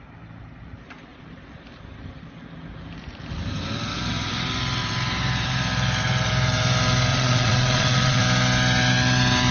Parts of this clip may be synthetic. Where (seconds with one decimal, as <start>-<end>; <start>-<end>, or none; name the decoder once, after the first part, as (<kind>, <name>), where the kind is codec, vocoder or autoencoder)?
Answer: 7.1-8.2 (vocoder, Vocos)